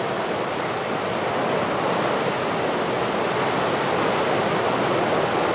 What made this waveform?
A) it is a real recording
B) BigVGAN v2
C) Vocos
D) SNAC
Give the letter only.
A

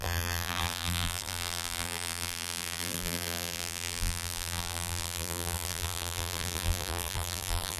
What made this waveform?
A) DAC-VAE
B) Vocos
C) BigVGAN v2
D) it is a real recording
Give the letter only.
C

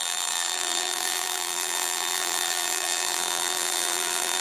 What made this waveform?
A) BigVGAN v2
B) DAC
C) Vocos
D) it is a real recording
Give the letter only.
A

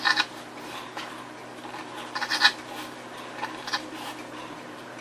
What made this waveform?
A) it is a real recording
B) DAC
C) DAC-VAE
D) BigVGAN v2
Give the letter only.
A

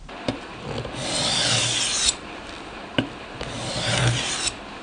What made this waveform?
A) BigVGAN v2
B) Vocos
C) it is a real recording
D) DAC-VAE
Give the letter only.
C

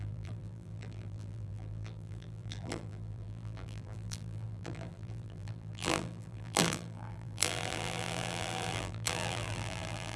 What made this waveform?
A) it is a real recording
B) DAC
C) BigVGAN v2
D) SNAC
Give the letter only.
C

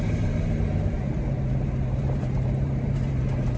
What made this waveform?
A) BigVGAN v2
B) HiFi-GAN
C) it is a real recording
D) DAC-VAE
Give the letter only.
A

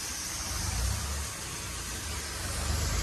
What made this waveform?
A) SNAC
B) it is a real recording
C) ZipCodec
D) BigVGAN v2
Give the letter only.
B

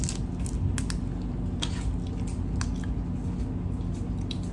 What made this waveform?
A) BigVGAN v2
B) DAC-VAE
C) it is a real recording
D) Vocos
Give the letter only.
C